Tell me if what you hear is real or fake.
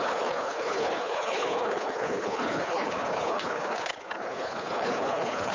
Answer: fake